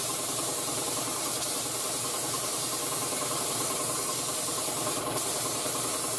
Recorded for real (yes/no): no